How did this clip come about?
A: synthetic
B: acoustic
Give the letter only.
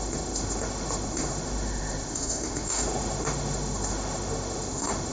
A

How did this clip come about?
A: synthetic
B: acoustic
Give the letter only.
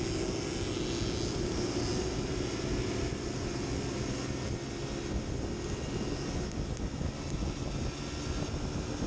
B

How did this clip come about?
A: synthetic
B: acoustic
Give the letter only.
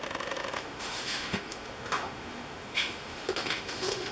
A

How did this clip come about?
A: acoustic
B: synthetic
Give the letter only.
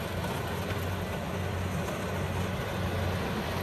A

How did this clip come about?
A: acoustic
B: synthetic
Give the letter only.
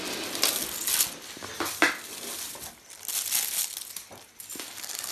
A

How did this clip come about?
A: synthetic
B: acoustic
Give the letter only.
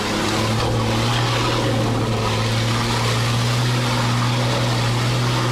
B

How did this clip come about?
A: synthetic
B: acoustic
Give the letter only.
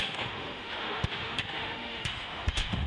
A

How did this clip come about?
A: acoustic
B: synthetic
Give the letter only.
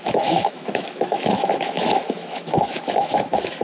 B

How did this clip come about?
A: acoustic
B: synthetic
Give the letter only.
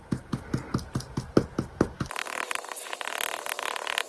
A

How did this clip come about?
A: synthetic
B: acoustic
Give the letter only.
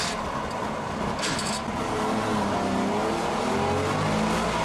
B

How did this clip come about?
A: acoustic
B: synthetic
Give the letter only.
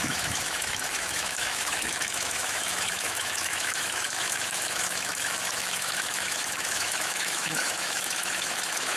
B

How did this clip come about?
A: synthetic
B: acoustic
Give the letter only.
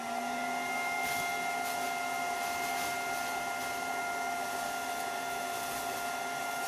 B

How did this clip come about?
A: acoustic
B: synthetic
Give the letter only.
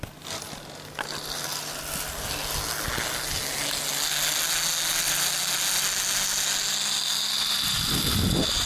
A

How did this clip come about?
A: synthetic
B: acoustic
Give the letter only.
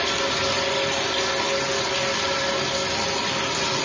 B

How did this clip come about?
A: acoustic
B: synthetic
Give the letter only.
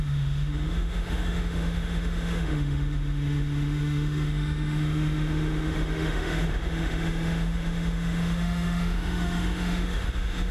B